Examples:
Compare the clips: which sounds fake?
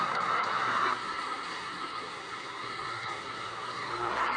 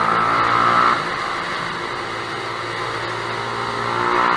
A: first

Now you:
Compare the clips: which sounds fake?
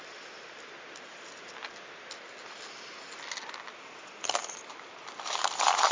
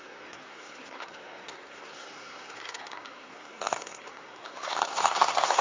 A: second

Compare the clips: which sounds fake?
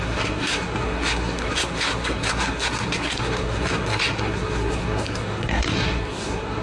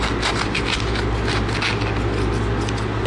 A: first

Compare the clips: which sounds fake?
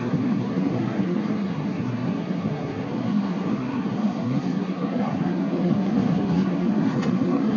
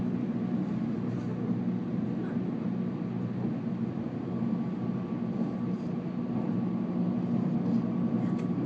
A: first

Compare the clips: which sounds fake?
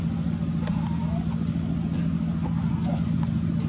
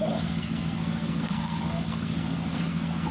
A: second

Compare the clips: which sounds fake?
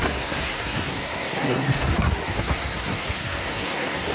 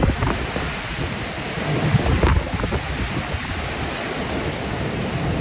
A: first